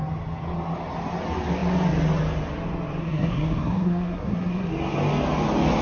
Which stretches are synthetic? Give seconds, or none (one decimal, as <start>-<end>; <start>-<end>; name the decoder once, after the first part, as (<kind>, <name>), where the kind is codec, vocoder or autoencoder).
3.0-4.7 (codec, SNAC)